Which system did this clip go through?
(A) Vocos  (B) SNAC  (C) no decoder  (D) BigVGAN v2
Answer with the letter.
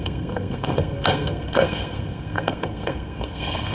B